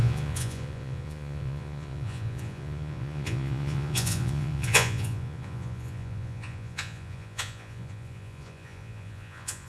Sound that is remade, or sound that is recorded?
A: remade